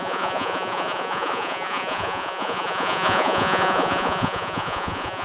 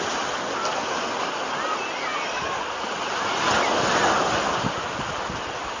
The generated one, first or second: first